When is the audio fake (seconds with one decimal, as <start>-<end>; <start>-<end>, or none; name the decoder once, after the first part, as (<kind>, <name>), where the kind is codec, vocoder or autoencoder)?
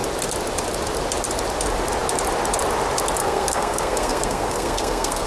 3.2-5.3 (codec, SNAC)